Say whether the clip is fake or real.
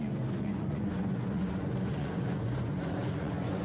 fake